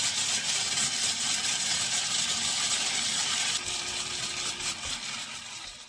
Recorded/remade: recorded